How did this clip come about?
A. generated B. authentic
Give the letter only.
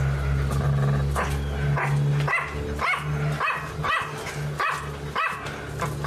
B